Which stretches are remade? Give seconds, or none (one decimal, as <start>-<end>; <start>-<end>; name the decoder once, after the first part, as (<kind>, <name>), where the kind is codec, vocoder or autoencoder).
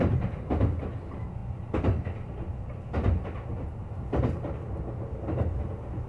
none